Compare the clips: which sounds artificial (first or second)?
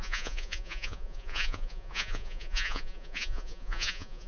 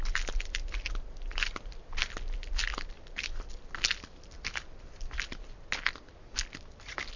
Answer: first